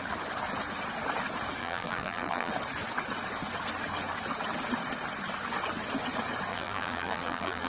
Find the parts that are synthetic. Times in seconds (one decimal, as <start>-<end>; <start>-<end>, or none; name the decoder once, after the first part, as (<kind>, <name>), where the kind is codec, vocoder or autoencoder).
1.6-2.5 (vocoder, BigVGAN v2); 6.5-7.7

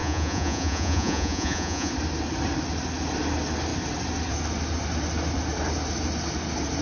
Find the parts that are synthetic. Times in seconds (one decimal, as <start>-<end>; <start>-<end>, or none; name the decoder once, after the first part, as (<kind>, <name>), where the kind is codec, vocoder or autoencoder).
0.0-1.9 (vocoder, Vocos)

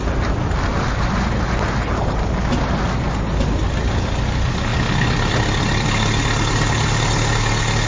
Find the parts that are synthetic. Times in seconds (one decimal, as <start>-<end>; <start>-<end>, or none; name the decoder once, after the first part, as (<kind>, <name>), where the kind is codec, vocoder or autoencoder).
none

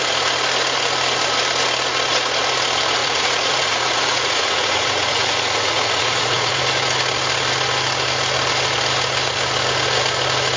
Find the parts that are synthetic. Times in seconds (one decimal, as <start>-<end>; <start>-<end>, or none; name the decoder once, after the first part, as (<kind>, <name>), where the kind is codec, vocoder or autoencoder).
3.0-6.6 (vocoder, Vocos)

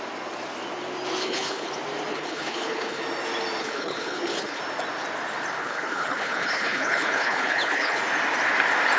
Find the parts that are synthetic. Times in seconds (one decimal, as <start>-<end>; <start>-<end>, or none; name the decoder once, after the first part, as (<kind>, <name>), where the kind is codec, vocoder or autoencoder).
1.2-1.7 (codec, HILCodec); 2.1-3.0; 3.6-4.6; 5.6-8.0

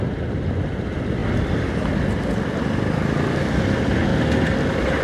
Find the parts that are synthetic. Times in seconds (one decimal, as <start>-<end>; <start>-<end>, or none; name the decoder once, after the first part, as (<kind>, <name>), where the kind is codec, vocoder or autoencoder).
none